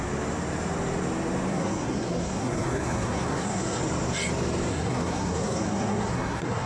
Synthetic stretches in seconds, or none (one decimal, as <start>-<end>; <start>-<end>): 1.5-3.8; 4.7-6.7